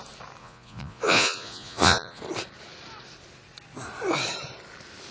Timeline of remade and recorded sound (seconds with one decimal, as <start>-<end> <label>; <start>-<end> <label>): 0.0-0.4 recorded; 0.4-2.2 remade; 2.2-5.1 recorded